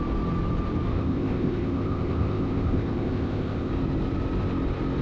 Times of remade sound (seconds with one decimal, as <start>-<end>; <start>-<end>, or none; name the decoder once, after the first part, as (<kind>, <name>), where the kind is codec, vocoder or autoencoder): 0.9-3.7 (codec, ZipCodec)